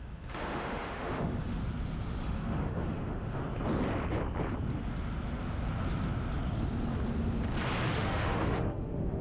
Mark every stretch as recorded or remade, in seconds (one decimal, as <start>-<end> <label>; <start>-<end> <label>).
0.0-1.6 remade; 1.6-2.2 recorded; 2.2-3.4 remade; 3.4-7.9 recorded; 7.9-9.2 remade